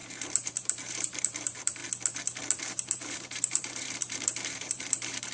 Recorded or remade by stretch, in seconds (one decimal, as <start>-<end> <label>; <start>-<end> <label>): 0.0-1.8 remade; 1.8-2.6 recorded; 2.6-5.3 remade